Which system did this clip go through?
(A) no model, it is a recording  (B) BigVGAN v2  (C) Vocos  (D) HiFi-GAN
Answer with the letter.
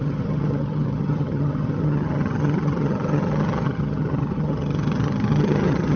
D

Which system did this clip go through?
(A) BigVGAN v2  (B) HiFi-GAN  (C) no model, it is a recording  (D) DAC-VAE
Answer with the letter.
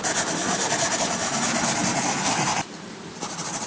C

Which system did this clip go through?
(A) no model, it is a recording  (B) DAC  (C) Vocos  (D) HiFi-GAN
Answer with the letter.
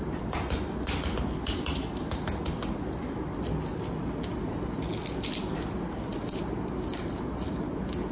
A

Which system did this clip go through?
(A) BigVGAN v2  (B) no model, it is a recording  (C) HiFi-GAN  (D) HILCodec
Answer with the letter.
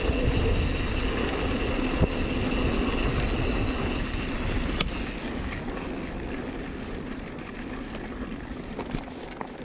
B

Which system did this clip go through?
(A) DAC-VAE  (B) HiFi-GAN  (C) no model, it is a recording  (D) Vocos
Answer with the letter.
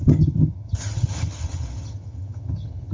B